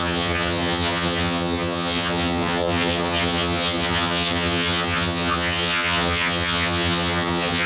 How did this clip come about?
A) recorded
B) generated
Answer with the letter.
B